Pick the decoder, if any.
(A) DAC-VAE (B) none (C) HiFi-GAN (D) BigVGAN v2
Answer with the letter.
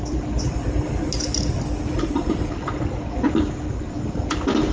B